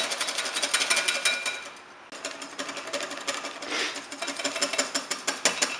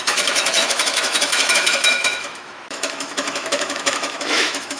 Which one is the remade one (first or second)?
second